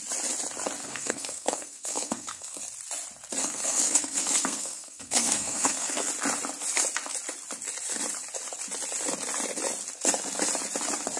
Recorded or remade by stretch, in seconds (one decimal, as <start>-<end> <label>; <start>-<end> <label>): 0.0-0.8 recorded; 0.8-2.6 remade; 2.6-3.4 recorded; 3.4-6.1 remade; 6.1-11.2 recorded